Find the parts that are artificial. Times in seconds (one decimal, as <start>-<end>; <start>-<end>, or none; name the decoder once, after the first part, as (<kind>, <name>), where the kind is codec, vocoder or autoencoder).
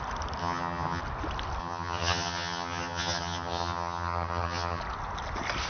0.4-1.0 (vocoder, HiFi-GAN); 1.6-4.8